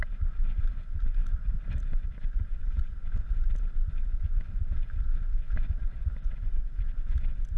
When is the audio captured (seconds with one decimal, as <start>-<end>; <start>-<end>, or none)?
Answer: 0.0-1.2; 1.8-7.6